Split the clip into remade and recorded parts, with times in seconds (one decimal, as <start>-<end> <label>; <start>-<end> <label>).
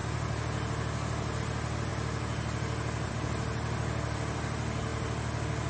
0.0-5.7 recorded